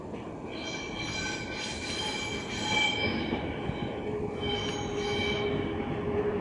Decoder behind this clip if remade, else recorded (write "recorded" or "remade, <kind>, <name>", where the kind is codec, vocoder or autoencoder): recorded